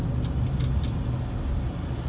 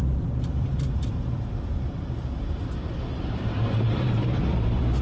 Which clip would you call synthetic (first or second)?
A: second